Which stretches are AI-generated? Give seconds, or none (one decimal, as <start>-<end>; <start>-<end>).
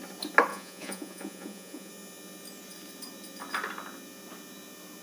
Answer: 0.5-1.9